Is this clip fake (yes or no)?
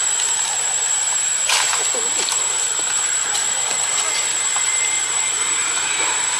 no